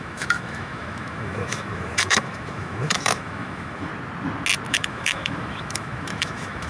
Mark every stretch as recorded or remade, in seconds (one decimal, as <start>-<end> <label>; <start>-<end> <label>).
0.0-3.9 remade; 3.9-4.7 recorded; 4.7-6.7 remade